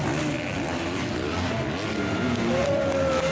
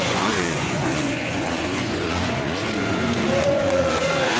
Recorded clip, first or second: first